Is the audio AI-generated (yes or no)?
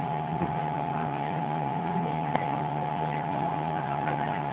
yes